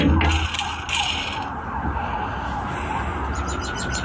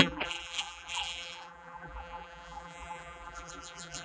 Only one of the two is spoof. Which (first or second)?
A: second